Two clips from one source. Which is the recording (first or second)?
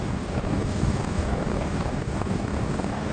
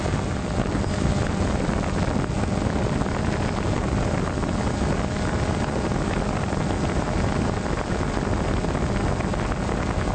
second